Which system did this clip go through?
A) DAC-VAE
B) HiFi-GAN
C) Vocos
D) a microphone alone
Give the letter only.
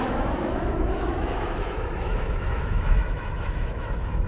A